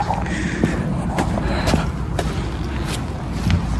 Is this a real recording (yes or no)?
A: yes